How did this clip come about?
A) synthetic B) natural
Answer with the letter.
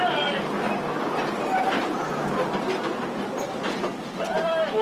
B